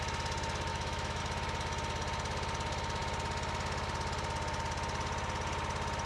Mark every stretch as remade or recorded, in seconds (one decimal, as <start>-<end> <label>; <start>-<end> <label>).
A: 0.0-0.7 recorded; 0.7-1.2 remade; 1.2-6.1 recorded